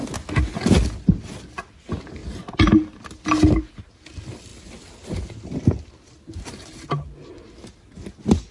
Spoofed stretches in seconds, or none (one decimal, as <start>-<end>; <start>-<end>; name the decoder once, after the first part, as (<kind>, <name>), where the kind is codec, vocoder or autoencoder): none